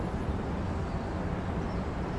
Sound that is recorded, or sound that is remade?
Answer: recorded